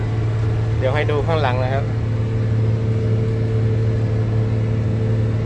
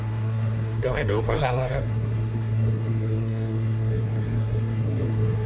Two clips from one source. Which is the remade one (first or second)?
second